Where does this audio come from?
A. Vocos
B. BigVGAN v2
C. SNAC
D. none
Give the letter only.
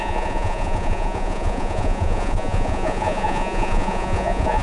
A